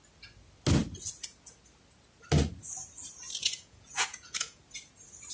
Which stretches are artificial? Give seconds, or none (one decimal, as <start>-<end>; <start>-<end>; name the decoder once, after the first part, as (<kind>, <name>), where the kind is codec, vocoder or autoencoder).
3.4-4.6 (vocoder, Vocos)